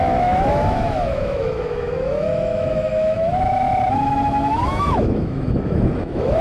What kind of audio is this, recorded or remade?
remade